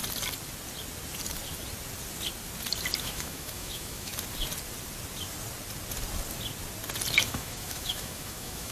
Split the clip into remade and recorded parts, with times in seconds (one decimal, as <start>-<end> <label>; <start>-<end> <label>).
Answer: 0.0-3.0 recorded; 3.0-4.1 remade; 4.1-7.2 recorded; 7.2-8.7 remade